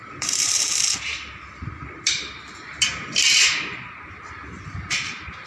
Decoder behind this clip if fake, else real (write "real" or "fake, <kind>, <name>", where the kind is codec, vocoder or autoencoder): fake, vocoder, BigVGAN v2